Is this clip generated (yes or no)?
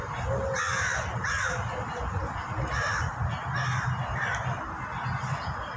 no